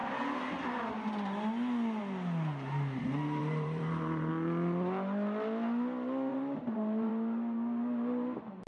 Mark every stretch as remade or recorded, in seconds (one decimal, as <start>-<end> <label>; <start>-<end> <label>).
0.0-3.4 recorded; 3.4-4.3 remade; 4.3-6.3 recorded; 6.3-7.1 remade; 7.1-8.7 recorded